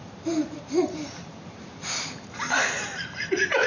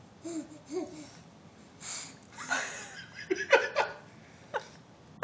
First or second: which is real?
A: second